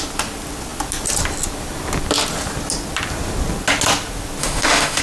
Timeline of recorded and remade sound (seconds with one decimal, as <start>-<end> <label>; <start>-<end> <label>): 0.0-4.4 recorded; 4.4-5.0 remade